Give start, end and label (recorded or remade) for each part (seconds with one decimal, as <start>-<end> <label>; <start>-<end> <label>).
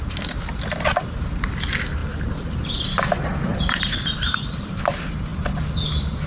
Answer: 0.0-2.0 recorded; 2.0-3.0 remade; 3.0-3.5 recorded; 3.5-4.8 remade; 4.8-6.3 recorded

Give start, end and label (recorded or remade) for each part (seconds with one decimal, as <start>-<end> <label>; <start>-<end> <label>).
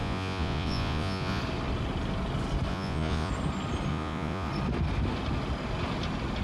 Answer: 0.0-1.4 remade; 1.4-2.7 recorded; 2.7-3.3 remade; 3.3-3.9 recorded; 3.9-4.5 remade; 4.5-6.4 recorded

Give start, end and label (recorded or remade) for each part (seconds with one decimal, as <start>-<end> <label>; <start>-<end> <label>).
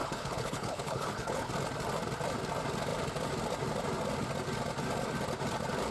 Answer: 0.0-1.5 remade; 1.5-5.9 recorded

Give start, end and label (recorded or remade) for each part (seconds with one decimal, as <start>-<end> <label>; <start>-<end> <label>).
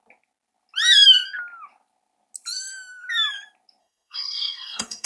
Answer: 0.0-3.8 recorded; 3.8-5.1 remade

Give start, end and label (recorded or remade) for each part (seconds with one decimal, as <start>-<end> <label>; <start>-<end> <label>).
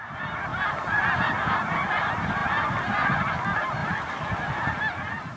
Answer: 0.0-5.4 recorded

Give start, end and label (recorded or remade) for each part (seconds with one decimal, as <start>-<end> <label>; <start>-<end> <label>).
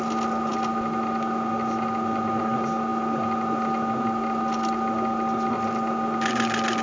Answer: 0.0-6.8 recorded